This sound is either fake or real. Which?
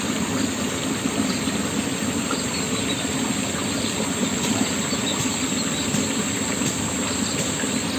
real